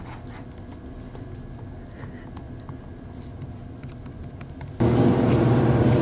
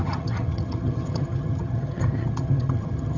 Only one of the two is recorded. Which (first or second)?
first